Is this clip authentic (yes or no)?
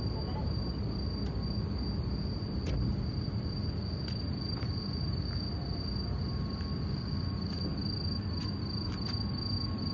yes